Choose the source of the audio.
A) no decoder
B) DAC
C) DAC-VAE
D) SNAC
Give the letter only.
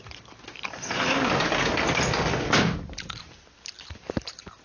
A